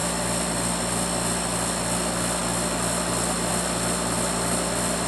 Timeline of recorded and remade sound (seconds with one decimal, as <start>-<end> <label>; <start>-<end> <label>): 0.0-0.9 remade; 0.9-2.4 recorded; 2.4-3.5 remade; 3.5-5.1 recorded